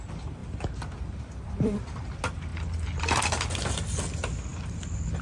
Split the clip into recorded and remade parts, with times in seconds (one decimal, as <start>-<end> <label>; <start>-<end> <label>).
0.0-5.2 recorded